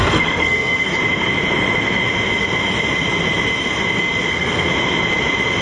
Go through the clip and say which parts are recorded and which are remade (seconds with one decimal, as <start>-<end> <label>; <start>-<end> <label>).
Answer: 0.0-0.9 remade; 0.9-4.3 recorded; 4.3-4.7 remade; 4.7-5.6 recorded